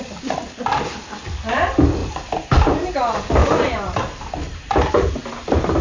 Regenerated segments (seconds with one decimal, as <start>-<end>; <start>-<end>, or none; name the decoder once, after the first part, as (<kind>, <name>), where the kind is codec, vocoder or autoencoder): 2.0-2.9 (vocoder, BigVGAN v2); 3.4-5.1